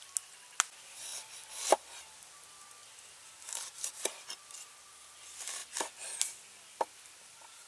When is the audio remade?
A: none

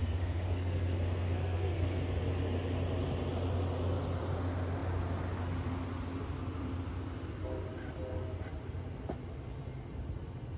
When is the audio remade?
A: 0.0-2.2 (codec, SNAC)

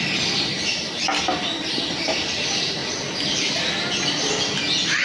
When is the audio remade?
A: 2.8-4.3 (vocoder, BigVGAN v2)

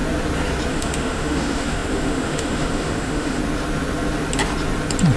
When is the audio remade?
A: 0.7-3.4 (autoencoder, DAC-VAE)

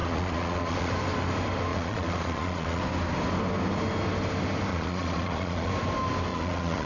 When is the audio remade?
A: 0.0-0.9 (vocoder, Vocos); 1.7-2.8; 4.7-5.7; 6.3-6.9

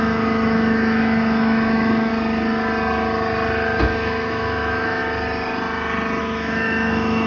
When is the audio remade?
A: 0.0-2.1 (autoencoder, DAC-VAE); 3.8-5.0; 6.2-7.3